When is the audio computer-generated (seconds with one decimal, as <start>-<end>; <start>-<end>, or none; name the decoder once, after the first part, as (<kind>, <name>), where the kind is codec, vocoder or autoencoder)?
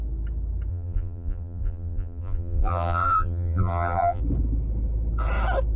0.7-4.2 (vocoder, BigVGAN v2)